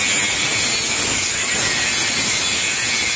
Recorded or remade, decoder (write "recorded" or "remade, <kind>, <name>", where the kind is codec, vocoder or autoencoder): recorded